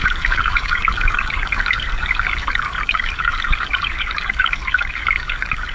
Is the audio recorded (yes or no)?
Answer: no